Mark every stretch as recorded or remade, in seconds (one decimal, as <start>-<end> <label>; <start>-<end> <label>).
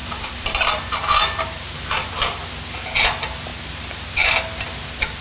0.0-0.7 remade; 0.7-5.2 recorded